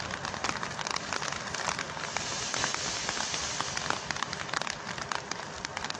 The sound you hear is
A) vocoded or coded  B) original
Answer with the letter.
B